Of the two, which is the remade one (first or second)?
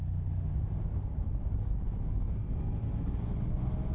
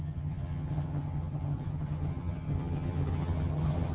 second